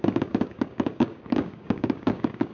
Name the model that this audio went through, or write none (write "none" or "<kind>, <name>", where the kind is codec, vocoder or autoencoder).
codec, DAC